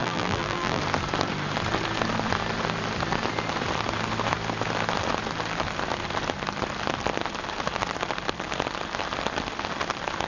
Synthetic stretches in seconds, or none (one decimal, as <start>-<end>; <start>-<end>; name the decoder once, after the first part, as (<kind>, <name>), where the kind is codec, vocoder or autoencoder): 0.0-0.8 (vocoder, BigVGAN v2)